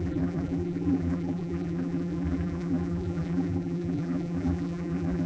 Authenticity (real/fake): fake